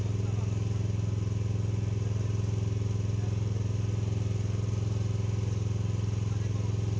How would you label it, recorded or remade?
recorded